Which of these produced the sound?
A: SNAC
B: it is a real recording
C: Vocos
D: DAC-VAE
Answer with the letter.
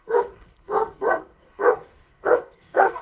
A